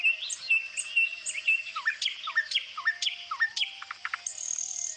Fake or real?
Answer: real